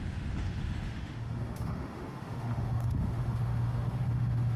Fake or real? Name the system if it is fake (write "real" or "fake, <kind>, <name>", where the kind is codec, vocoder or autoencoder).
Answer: fake, autoencoder, DAC-VAE